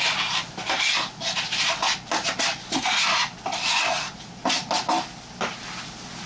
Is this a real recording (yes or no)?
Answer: yes